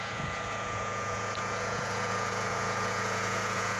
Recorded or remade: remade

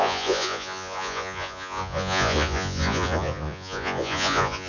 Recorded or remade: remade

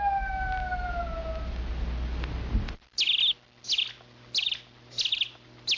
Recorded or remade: recorded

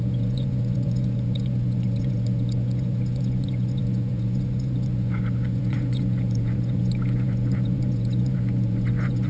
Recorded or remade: remade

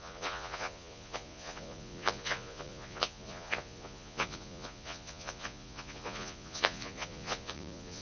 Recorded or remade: remade